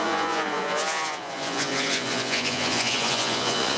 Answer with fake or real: fake